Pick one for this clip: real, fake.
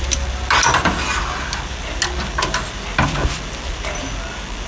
real